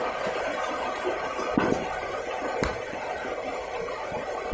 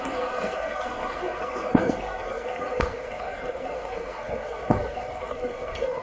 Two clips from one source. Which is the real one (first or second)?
first